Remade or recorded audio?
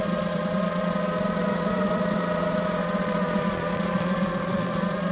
remade